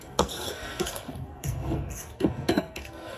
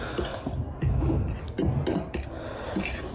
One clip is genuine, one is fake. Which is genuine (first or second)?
second